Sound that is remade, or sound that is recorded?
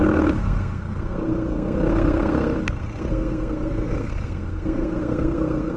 remade